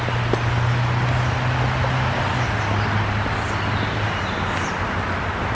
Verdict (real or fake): real